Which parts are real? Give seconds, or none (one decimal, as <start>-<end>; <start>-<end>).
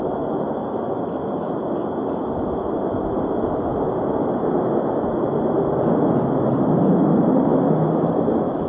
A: 0.0-8.7